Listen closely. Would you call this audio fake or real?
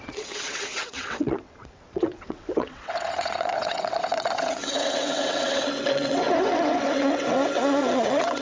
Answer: fake